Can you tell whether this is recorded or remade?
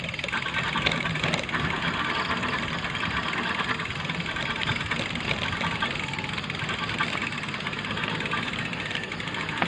remade